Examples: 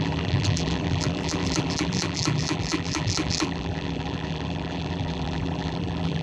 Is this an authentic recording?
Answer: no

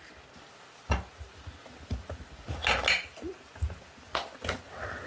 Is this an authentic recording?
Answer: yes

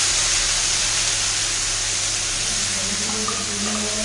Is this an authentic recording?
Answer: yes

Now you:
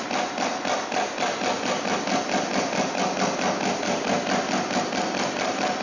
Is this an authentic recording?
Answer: yes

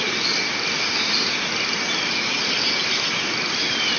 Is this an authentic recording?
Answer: yes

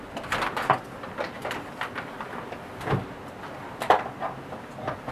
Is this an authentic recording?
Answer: yes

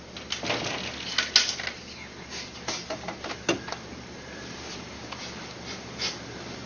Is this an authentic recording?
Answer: yes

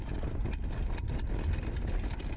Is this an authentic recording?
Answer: yes